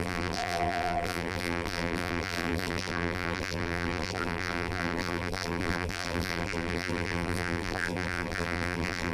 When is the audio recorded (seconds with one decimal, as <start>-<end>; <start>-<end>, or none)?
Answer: none